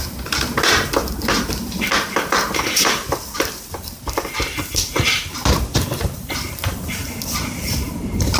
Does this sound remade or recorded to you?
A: remade